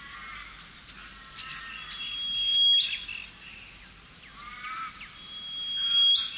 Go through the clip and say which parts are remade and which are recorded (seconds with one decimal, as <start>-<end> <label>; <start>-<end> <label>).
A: 0.0-6.4 recorded